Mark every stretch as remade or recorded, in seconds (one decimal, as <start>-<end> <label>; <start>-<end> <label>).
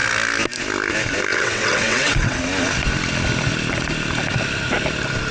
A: 0.0-1.3 recorded; 1.3-2.4 remade; 2.4-5.3 recorded